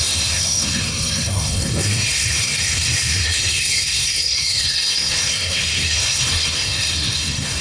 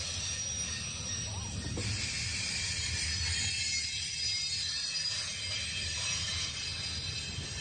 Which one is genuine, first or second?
second